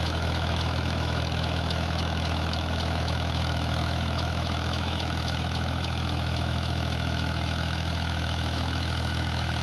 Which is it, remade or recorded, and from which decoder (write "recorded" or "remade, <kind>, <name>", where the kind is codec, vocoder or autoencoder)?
remade, autoencoder, DAC-VAE